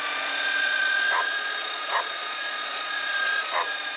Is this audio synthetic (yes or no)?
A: yes